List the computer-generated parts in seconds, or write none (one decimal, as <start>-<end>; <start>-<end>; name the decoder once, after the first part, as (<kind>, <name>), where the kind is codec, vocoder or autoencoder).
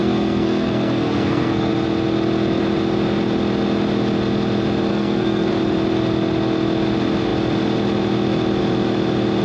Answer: 0.0-1.7 (codec, SNAC); 4.9-5.5